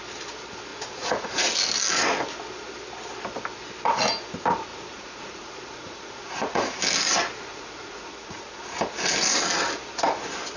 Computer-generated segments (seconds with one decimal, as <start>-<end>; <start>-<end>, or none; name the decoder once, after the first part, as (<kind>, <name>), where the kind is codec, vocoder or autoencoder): 0.7-1.5 (vocoder, Vocos); 4.7-6.8; 7.5-8.6